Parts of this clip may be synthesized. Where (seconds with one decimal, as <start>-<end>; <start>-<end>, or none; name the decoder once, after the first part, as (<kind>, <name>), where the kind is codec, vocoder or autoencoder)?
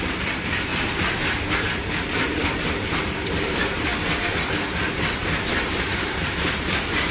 0.0-3.9 (vocoder, BigVGAN v2); 5.8-7.1